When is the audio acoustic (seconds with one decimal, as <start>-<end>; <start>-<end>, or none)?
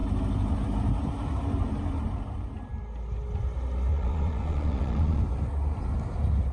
0.0-3.9; 5.2-6.5